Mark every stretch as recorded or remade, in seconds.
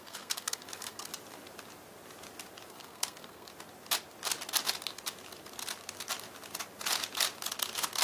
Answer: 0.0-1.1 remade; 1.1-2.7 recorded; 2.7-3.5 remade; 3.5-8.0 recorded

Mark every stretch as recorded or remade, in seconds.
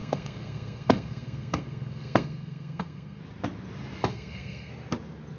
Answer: 0.0-3.2 remade; 3.2-4.1 recorded; 4.1-4.7 remade; 4.7-5.4 recorded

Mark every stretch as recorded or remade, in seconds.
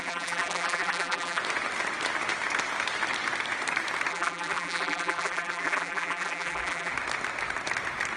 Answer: 0.0-1.4 remade; 1.4-4.1 recorded; 4.1-6.9 remade; 6.9-8.2 recorded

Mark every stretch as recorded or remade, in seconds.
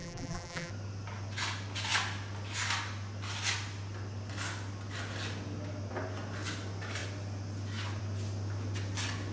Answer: 0.0-0.7 remade; 0.7-9.3 recorded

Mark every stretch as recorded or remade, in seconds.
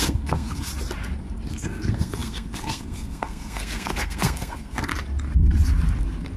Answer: 0.0-0.7 remade; 0.7-1.5 recorded; 1.5-4.9 remade; 4.9-6.4 recorded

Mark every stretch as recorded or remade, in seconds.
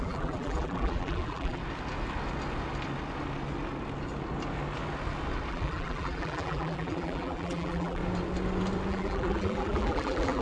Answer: 0.0-1.6 remade; 1.6-5.5 recorded; 5.5-8.0 remade; 8.0-8.9 recorded; 8.9-10.4 remade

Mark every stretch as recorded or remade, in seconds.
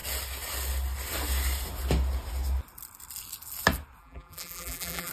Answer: 0.0-4.0 recorded; 4.0-5.1 remade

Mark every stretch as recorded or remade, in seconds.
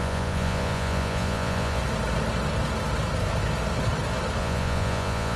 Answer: 0.0-1.8 remade; 1.8-4.4 recorded; 4.4-5.4 remade